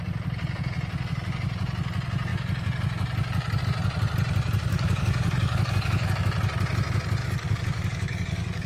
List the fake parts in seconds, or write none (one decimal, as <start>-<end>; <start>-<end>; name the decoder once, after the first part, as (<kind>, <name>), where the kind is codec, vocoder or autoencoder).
4.7-6.2 (codec, DAC); 7.2-8.7